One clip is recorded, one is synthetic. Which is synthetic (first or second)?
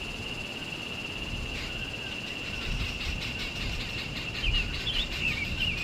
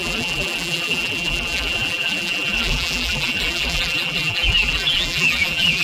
second